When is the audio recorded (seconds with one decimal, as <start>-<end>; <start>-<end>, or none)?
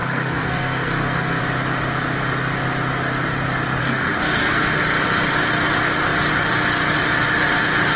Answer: 1.4-3.8; 4.8-8.0